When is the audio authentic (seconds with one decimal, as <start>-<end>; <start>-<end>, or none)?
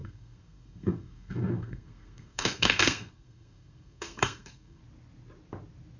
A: 4.8-6.0